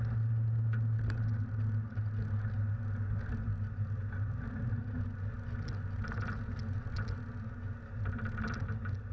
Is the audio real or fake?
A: real